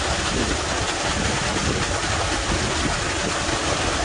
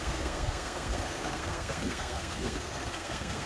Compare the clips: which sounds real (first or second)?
first